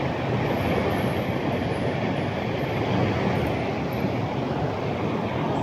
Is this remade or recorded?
recorded